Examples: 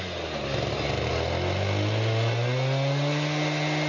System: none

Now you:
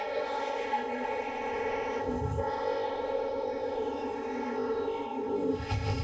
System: codec, ZipCodec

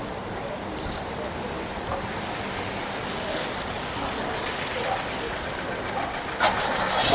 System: none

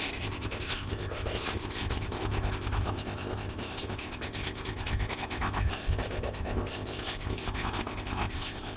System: codec, ZipCodec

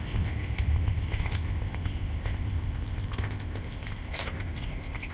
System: codec, ZipCodec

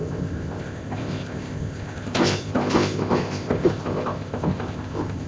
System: codec, ZipCodec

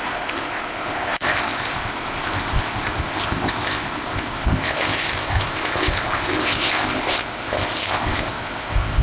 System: codec, ZipCodec